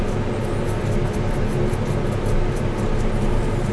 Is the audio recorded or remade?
recorded